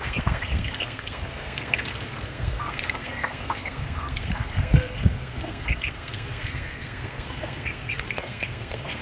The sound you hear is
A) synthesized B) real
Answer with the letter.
A